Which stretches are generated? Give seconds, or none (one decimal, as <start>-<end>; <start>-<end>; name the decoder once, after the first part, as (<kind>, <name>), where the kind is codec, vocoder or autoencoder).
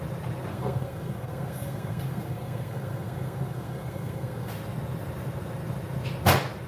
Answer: 0.5-4.5 (codec, SNAC)